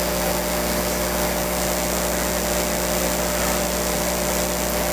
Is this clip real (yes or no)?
yes